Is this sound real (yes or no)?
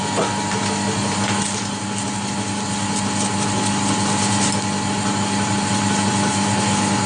yes